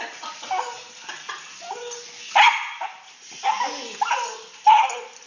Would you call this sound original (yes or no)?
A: yes